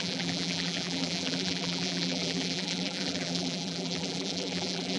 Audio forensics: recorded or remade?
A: remade